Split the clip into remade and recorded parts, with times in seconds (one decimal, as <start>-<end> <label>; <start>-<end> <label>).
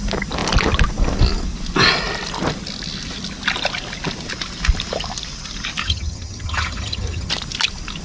0.0-5.8 recorded; 5.8-7.3 remade; 7.3-8.0 recorded